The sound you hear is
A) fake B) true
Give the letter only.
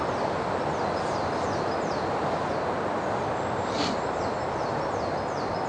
B